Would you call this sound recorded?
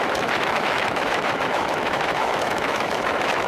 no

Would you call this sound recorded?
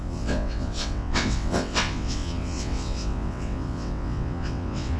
no